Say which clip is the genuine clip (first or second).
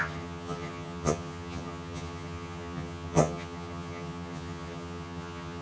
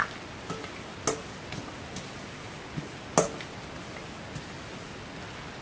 second